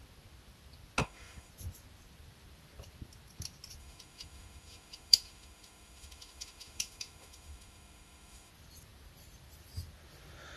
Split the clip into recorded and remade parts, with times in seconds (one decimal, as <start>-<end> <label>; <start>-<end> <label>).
0.0-1.0 recorded; 1.0-1.5 remade; 1.5-3.8 recorded; 3.8-8.5 remade; 8.5-10.6 recorded